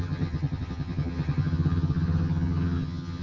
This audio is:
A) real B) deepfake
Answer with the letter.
B